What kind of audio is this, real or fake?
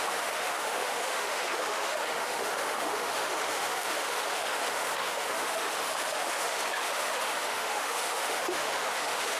fake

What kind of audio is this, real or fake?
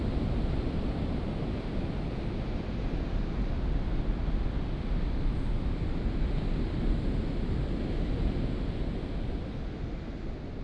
real